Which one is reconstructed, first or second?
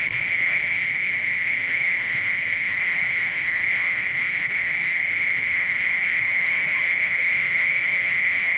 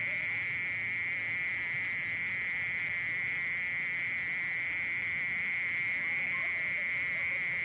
first